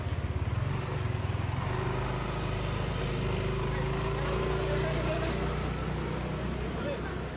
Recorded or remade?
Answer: recorded